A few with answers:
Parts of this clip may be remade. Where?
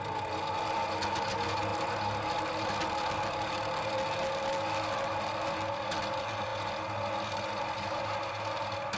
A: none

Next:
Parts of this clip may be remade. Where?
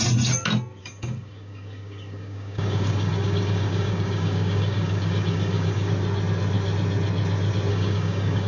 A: 0.8-5.9 (codec, DAC); 7.7-8.5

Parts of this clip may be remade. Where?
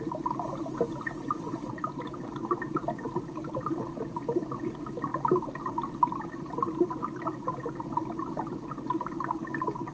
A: none